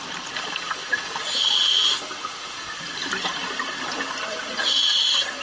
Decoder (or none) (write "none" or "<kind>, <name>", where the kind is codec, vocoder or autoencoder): none